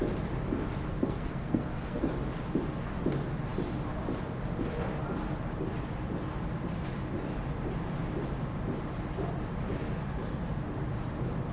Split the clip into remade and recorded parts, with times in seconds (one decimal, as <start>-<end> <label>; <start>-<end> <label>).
0.0-0.9 recorded; 0.9-2.1 remade; 2.1-11.5 recorded

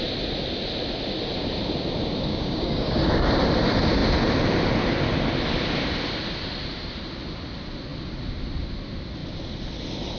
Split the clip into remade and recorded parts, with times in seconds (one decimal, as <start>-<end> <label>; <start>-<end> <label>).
0.0-2.3 recorded; 2.3-3.1 remade; 3.1-10.2 recorded

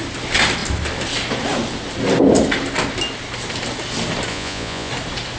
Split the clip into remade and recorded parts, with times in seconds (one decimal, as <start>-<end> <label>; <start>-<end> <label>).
0.0-4.3 recorded; 4.3-4.9 remade; 4.9-5.4 recorded

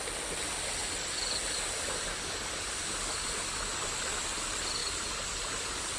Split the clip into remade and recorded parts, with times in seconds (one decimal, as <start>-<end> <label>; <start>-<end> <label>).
0.0-0.8 recorded; 0.8-4.2 remade; 4.2-4.8 recorded; 4.8-5.4 remade; 5.4-6.0 recorded

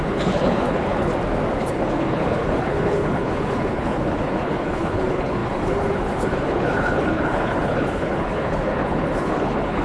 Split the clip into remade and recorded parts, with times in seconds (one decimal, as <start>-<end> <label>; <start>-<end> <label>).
0.0-1.1 remade; 1.1-1.6 recorded; 1.6-9.8 remade

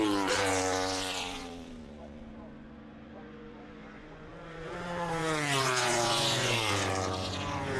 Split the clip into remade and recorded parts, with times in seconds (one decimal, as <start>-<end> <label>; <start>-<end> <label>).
0.0-7.8 remade

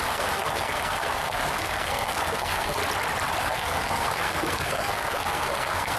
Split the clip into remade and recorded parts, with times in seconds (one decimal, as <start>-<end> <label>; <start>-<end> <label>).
0.0-2.8 remade; 2.8-3.4 recorded; 3.4-6.0 remade